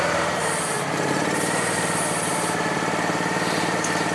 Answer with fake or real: fake